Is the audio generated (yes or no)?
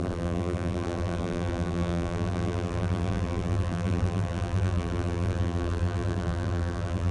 yes